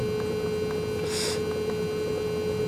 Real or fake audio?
real